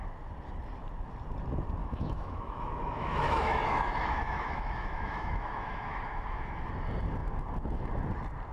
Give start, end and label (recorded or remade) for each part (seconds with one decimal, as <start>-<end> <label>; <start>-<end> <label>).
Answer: 0.0-1.8 recorded; 1.8-6.7 remade; 6.7-8.5 recorded